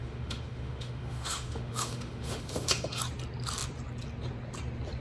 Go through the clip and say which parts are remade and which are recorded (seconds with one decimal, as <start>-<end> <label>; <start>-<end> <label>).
0.0-3.0 remade; 3.0-5.0 recorded